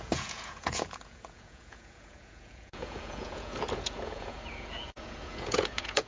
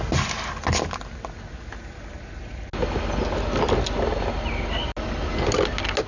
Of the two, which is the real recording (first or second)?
second